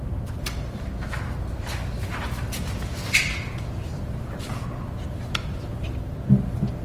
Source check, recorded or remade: recorded